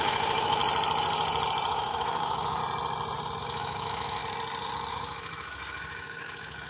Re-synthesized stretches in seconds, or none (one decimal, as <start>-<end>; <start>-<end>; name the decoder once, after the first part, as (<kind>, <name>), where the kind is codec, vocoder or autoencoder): 0.0-0.6 (autoencoder, DAC-VAE); 1.7-2.6; 3.4-4.2; 4.9-6.7